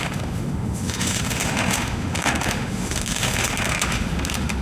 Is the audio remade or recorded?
remade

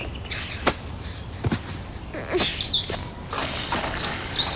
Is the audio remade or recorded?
recorded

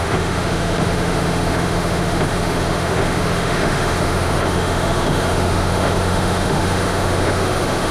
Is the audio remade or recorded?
remade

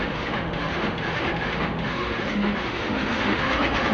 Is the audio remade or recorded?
remade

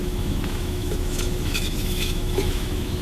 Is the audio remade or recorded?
remade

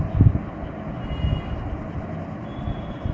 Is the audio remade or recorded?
recorded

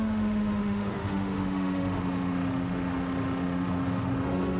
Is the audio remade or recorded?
remade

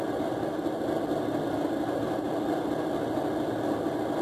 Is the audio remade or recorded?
recorded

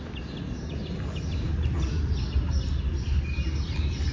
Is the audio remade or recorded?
recorded